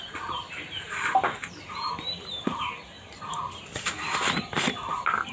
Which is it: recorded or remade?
recorded